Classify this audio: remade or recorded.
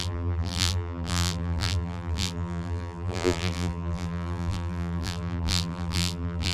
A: remade